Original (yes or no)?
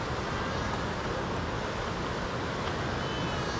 yes